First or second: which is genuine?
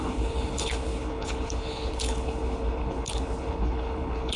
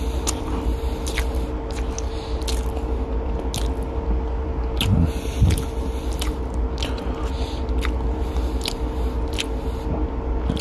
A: second